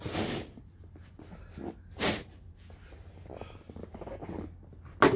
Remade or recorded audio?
recorded